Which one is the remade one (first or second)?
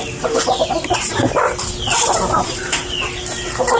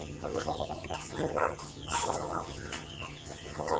second